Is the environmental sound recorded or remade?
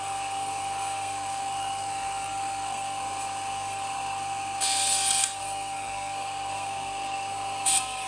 remade